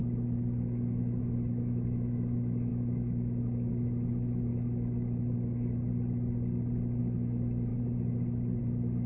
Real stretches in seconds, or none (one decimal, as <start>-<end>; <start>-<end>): 4.5-7.0; 7.7-8.6